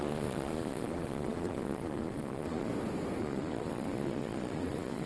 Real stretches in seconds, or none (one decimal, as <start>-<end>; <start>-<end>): 2.7-3.2